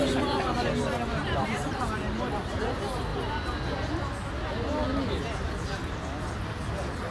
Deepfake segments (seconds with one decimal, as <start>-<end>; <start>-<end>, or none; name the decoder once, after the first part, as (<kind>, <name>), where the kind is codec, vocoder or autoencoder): 1.2-2.4 (vocoder, BigVGAN v2)